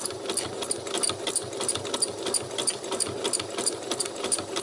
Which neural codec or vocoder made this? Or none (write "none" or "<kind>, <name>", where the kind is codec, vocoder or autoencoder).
none